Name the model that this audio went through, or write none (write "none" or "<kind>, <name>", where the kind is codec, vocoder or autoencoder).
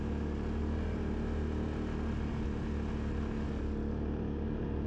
none